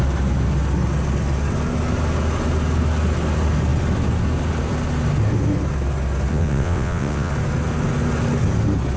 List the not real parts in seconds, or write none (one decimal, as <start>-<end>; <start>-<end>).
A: 6.3-7.3